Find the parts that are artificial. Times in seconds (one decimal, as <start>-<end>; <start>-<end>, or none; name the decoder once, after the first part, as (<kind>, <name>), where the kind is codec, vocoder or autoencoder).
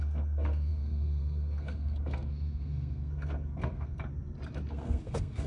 0.0-4.1 (codec, SNAC); 4.7-5.5